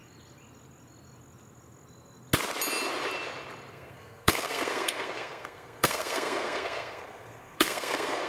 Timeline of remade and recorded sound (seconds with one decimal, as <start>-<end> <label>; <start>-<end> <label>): 0.0-3.7 recorded; 3.7-8.3 remade